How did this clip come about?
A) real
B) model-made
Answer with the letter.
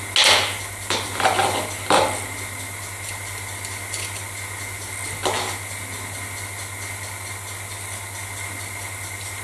A